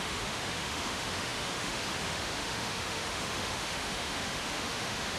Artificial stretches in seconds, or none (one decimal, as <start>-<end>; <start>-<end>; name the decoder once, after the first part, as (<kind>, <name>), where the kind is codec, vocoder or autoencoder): 0.0-5.2 (autoencoder, DAC-VAE)